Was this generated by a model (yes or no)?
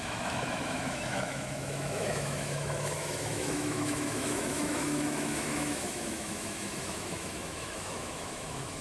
yes